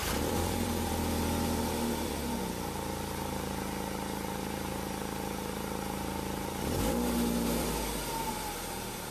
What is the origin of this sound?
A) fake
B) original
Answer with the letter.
A